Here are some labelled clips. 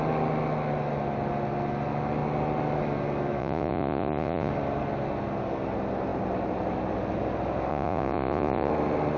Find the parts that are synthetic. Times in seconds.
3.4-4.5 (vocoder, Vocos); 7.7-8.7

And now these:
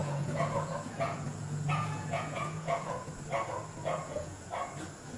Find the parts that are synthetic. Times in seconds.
0.0-3.1 (vocoder, Vocos); 3.8-4.5

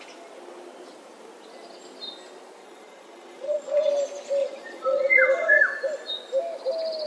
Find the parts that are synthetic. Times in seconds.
2.6-3.9 (vocoder, Vocos); 4.4-5.6

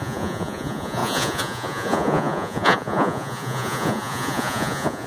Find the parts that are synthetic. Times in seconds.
0.0-5.1 (vocoder, Vocos)